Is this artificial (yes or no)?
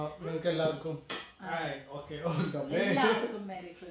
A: yes